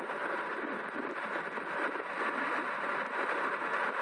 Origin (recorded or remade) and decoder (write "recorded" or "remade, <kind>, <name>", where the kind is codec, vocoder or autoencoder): remade, vocoder, BigVGAN v2